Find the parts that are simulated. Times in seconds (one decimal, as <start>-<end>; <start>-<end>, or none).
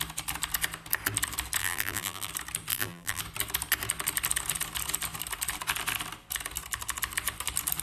1.6-2.3; 2.7-3.2